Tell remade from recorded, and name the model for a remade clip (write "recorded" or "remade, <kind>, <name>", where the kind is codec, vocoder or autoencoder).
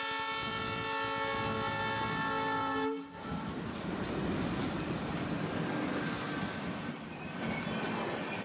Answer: recorded